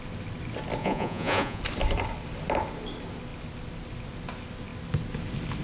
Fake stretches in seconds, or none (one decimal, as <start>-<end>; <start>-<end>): 0.8-1.6